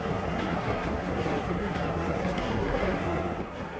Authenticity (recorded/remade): remade